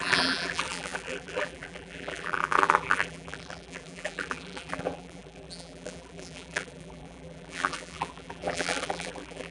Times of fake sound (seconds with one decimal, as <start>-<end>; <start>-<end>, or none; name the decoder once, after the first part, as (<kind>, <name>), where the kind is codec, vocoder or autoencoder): 0.0-9.5 (vocoder, BigVGAN v2)